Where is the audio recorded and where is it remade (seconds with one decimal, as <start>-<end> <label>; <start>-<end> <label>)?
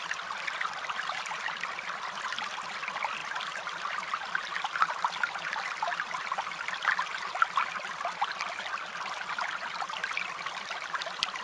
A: 0.0-11.4 recorded